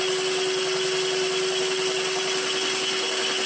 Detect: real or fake real